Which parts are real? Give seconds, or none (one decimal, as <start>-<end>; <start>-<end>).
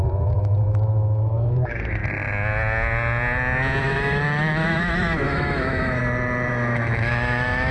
2.0-3.8; 6.0-6.5